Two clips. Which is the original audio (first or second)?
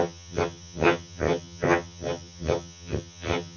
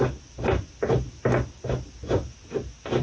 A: second